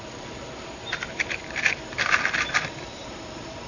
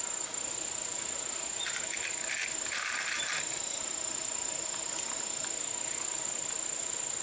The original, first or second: second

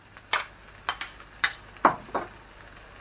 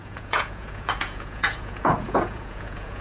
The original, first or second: first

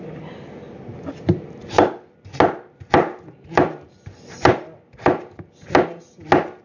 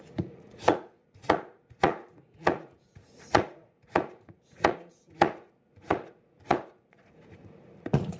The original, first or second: first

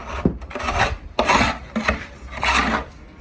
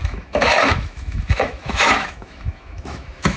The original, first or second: first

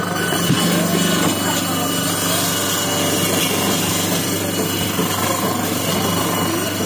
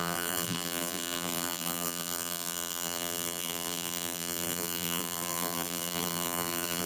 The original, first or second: first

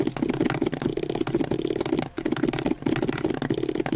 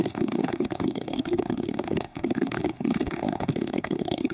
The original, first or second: first